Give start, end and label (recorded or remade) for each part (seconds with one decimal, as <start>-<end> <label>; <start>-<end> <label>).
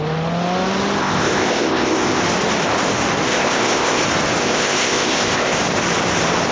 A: 0.0-1.0 recorded; 1.0-2.2 remade; 2.2-3.3 recorded; 3.3-4.0 remade; 4.0-4.4 recorded; 4.4-5.6 remade; 5.6-6.5 recorded